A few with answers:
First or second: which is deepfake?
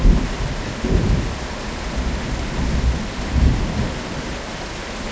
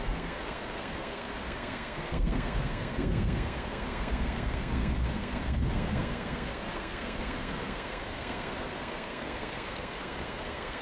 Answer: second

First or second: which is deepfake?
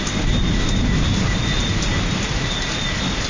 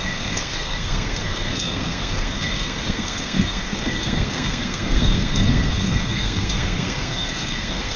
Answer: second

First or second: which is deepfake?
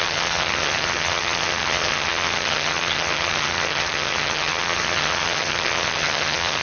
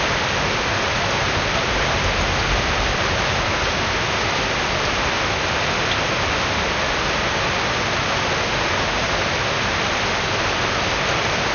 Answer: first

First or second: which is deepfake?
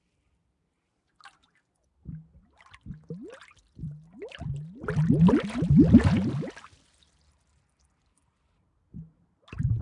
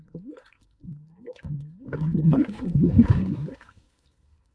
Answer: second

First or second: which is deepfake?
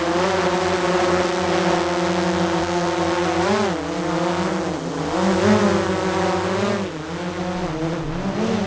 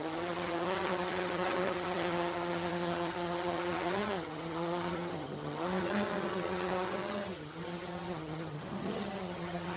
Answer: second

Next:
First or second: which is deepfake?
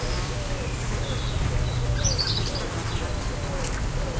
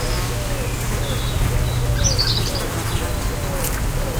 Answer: first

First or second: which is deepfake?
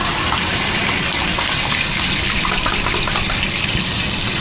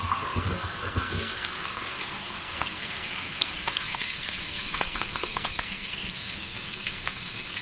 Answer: second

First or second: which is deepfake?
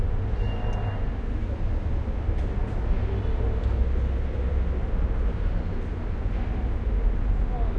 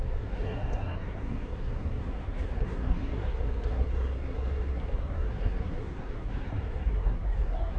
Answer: second